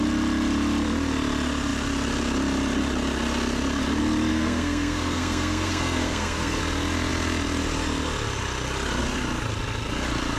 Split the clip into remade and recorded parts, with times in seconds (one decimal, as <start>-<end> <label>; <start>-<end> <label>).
0.0-4.3 recorded; 4.3-6.6 remade; 6.6-10.4 recorded